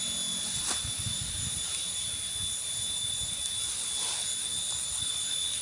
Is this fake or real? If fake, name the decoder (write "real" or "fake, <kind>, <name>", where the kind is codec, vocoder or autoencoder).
real